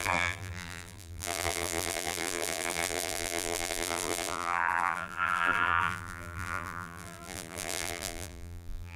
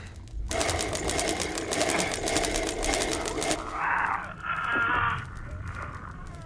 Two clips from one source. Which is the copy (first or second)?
first